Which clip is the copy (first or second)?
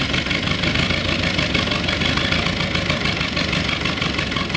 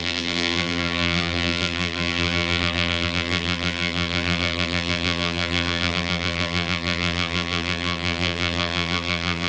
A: second